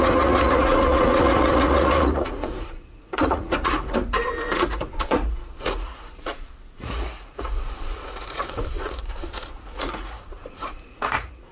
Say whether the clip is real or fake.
fake